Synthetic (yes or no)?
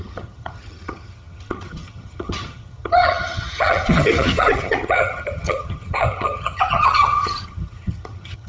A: yes